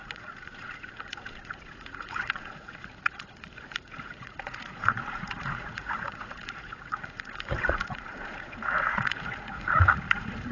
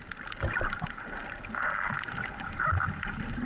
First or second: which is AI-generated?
first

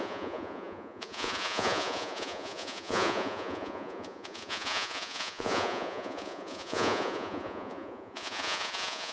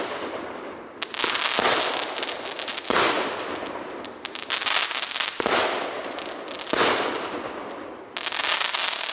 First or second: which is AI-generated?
first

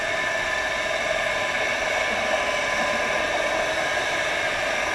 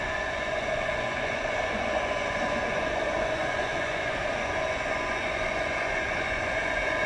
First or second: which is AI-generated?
second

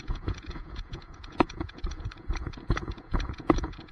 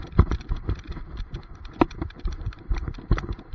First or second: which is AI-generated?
first